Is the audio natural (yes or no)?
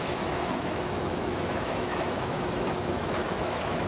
no